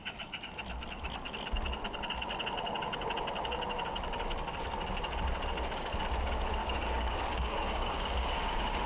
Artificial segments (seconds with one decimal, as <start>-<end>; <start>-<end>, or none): 6.6-8.4